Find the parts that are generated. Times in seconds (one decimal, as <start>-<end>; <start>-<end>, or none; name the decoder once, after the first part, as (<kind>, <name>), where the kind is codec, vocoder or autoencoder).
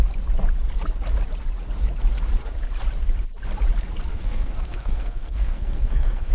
4.1-6.3 (codec, SNAC)